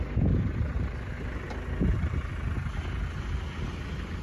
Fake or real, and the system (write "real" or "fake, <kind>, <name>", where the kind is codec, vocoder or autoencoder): real